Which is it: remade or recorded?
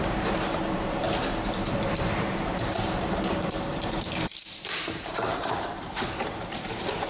remade